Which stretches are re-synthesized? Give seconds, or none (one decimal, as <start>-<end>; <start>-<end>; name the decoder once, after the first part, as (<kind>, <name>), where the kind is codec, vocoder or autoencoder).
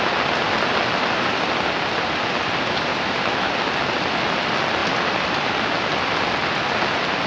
2.9-3.5 (autoencoder, DAC-VAE)